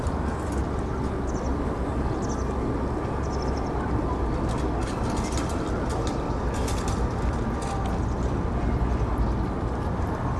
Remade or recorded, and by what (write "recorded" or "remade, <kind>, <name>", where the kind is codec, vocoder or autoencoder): recorded